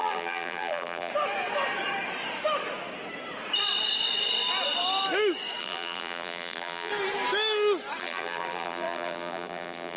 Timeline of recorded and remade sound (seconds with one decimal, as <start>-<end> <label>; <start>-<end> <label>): 0.0-1.1 remade; 1.1-5.6 recorded; 5.6-6.9 remade; 6.9-8.0 recorded; 8.0-10.0 remade